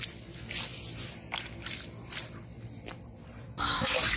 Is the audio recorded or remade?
recorded